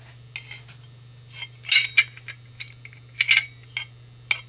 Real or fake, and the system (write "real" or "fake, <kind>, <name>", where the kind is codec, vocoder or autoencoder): real